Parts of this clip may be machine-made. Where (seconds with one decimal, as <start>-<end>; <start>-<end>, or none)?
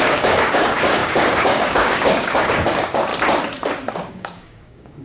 0.0-3.1; 4.1-5.0